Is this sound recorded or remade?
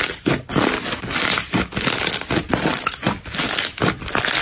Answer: recorded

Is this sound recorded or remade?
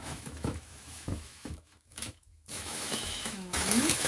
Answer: remade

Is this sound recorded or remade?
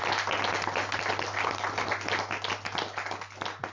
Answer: recorded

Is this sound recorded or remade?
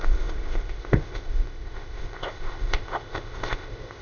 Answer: remade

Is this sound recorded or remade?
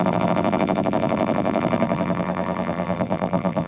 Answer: remade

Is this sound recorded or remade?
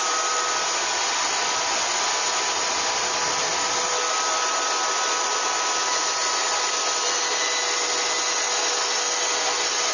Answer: recorded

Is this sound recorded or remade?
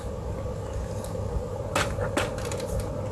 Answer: recorded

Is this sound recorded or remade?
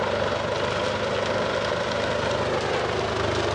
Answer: recorded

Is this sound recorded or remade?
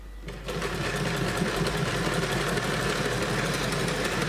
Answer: recorded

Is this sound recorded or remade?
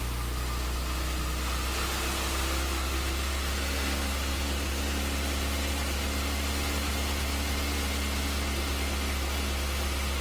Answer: recorded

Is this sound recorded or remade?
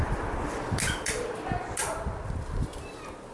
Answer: recorded